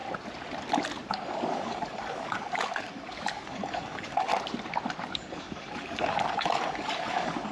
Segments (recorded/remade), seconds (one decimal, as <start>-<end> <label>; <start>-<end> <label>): 0.0-1.1 recorded; 1.1-4.3 remade; 4.3-5.0 recorded; 5.0-7.5 remade